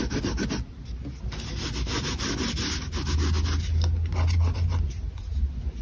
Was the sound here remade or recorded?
recorded